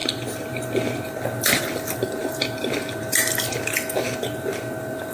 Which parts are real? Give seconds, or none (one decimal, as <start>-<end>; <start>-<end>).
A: 0.0-5.1